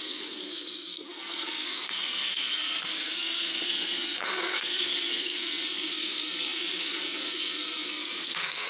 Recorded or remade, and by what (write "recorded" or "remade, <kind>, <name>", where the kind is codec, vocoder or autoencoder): remade, codec, SNAC